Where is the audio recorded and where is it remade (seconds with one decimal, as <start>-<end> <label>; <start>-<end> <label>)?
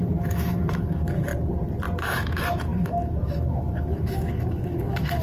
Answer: 0.0-1.3 remade; 1.3-2.0 recorded; 2.0-5.2 remade